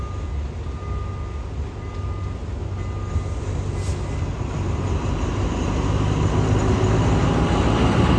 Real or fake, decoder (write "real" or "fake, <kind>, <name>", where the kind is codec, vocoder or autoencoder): real